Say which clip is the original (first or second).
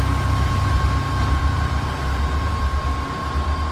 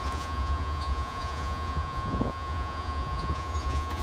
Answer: first